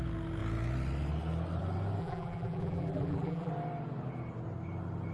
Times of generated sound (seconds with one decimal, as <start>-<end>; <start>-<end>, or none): 2.0-3.5